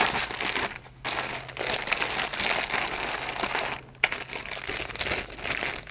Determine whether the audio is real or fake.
real